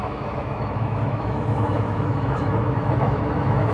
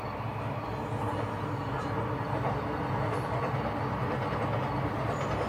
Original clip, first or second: second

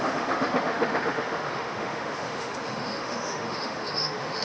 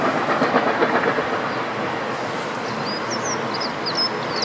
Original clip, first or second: second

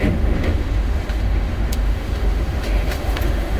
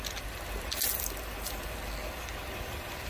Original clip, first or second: second